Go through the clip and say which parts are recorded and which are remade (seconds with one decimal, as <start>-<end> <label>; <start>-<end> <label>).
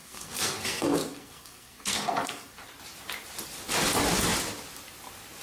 0.0-2.6 remade; 2.6-5.4 recorded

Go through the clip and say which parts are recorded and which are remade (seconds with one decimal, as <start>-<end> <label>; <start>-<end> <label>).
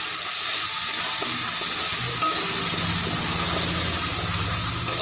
0.0-5.0 recorded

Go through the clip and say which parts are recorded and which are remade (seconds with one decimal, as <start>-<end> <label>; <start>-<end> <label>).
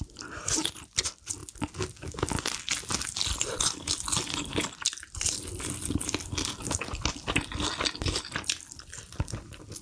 0.0-9.8 recorded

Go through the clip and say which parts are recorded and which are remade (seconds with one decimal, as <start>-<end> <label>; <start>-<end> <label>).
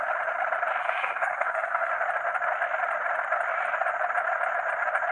0.0-0.8 recorded; 0.8-1.9 remade; 1.9-5.1 recorded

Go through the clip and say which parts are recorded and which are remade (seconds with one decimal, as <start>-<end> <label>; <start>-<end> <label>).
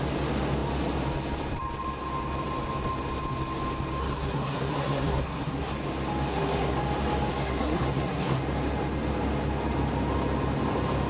0.0-4.0 recorded; 4.0-5.7 remade; 5.7-6.3 recorded; 6.3-6.8 remade; 6.8-7.3 recorded; 7.3-8.4 remade; 8.4-11.1 recorded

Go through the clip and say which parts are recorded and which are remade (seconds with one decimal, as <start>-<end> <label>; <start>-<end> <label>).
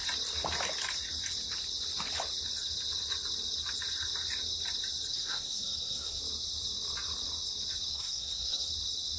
0.0-5.1 recorded; 5.1-6.2 remade; 6.2-7.9 recorded; 7.9-8.7 remade; 8.7-9.2 recorded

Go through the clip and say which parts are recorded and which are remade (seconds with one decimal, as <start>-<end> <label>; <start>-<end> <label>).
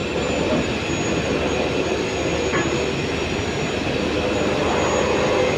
0.0-5.6 recorded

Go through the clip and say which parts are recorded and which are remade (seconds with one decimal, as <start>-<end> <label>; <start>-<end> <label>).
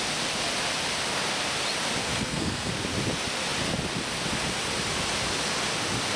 0.0-2.0 recorded; 2.0-2.7 remade; 2.7-6.2 recorded